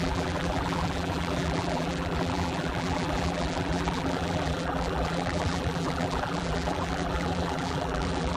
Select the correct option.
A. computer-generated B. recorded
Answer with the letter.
A